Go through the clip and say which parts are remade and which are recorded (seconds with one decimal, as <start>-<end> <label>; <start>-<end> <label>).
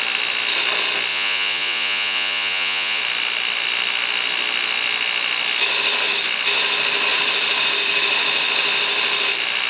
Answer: 0.0-1.1 recorded; 1.1-3.0 remade; 3.0-9.7 recorded